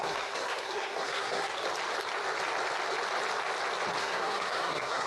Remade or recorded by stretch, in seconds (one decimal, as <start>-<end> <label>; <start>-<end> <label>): 0.0-1.5 remade; 1.5-4.0 recorded; 4.0-5.1 remade